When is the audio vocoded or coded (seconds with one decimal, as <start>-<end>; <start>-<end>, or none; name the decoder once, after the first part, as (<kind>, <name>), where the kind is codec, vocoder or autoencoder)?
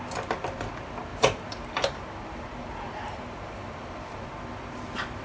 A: 1.1-4.2 (vocoder, BigVGAN v2)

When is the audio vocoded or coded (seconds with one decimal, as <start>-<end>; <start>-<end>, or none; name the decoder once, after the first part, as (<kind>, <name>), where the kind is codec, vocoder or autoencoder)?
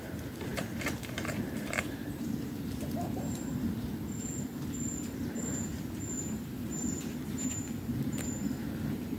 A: 0.0-3.9 (vocoder, BigVGAN v2); 5.2-9.2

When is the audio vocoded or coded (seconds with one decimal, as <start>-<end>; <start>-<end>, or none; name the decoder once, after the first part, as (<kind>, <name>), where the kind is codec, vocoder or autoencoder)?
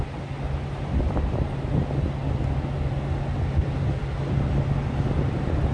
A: none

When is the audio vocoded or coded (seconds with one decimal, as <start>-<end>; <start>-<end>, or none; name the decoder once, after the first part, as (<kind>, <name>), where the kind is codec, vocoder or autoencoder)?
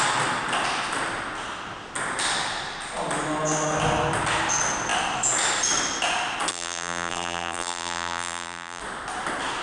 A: 6.5-8.8 (vocoder, BigVGAN v2)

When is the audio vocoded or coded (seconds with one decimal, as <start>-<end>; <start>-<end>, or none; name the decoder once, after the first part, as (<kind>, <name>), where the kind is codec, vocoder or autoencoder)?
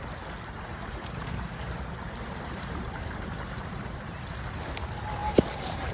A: 0.7-4.2 (vocoder, BigVGAN v2); 5.2-5.9